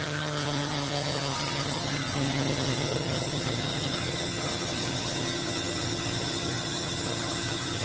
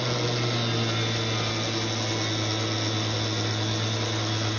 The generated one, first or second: first